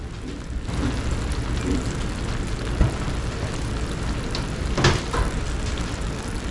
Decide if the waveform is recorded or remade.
recorded